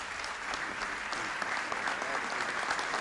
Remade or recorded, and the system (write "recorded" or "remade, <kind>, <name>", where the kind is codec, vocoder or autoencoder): recorded